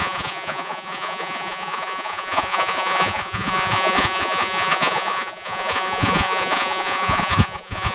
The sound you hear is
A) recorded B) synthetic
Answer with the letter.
B